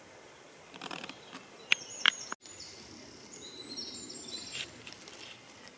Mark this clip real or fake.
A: real